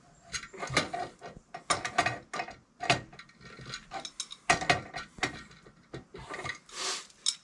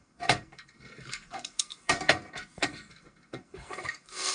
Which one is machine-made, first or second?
second